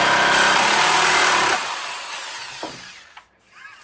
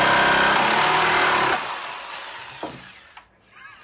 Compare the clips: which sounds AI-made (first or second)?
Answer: first